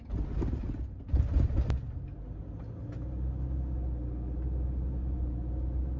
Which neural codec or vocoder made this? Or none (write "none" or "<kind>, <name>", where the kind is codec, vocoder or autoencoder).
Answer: none